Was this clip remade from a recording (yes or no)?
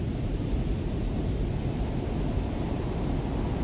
no